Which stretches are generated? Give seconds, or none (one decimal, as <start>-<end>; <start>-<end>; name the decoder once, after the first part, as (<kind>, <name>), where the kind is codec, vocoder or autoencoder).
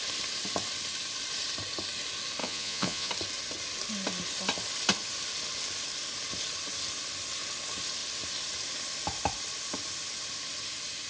2.4-3.1 (vocoder, Vocos)